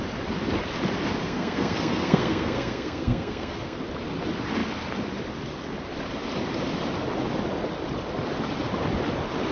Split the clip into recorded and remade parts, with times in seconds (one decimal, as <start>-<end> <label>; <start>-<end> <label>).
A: 0.0-1.2 recorded; 1.2-3.8 remade; 3.8-9.5 recorded